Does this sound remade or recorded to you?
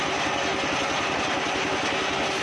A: recorded